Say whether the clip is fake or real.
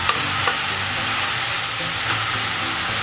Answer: real